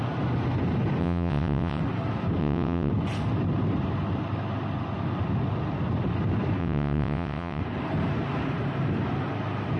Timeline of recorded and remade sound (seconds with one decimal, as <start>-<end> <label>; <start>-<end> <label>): 0.0-1.0 recorded; 1.0-1.8 remade; 1.8-2.4 recorded; 2.4-2.9 remade; 2.9-6.6 recorded; 6.6-7.6 remade; 7.6-9.8 recorded